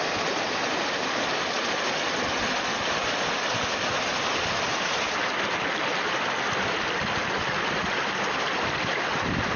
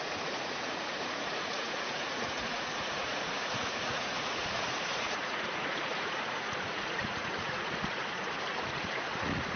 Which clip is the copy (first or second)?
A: second